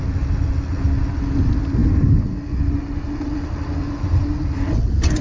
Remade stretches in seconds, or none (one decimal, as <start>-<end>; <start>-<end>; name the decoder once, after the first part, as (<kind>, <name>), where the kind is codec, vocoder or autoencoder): none